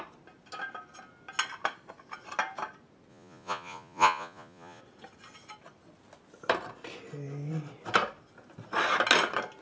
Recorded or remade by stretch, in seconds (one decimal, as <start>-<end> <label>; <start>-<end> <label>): 0.0-3.1 recorded; 3.1-4.8 remade; 4.8-9.6 recorded